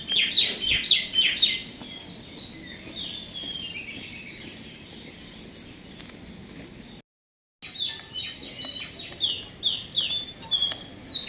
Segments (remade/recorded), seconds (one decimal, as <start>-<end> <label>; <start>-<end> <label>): 0.0-3.8 recorded; 3.8-5.1 remade; 5.1-11.3 recorded